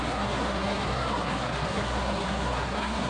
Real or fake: fake